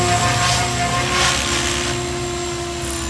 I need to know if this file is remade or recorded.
recorded